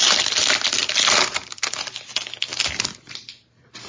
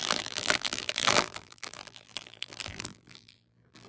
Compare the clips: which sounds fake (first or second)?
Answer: second